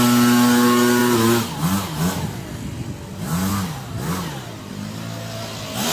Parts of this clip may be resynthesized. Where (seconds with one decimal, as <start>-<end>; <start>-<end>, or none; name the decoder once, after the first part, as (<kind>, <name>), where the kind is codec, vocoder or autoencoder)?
none